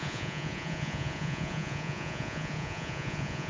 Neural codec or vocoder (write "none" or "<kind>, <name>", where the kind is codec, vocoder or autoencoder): vocoder, Vocos